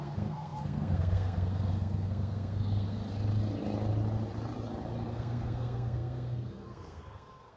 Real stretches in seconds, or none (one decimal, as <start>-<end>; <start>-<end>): 3.0-5.1